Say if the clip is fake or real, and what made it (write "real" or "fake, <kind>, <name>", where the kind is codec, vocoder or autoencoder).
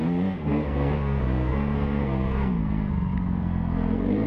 fake, codec, SNAC